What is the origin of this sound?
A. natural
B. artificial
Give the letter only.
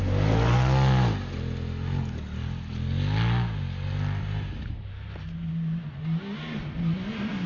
A